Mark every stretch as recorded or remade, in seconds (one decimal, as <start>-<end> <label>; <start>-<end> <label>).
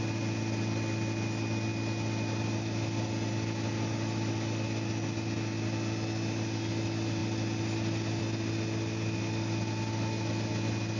0.0-11.0 recorded